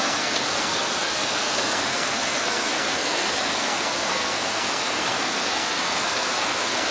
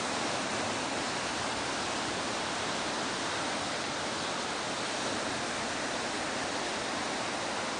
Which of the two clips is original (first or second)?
second